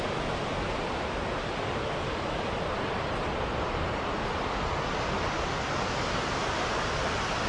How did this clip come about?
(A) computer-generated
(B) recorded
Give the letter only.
B